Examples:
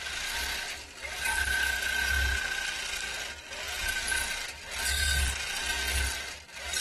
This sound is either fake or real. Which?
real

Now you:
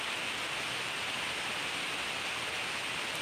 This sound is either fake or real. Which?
real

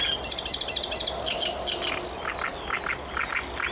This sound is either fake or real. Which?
real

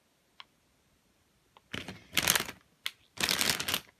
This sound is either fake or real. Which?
real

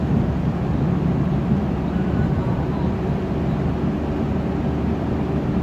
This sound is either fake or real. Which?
real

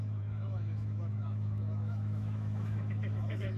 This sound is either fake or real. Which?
fake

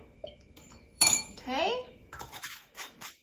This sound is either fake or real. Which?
fake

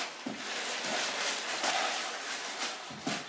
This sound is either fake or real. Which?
real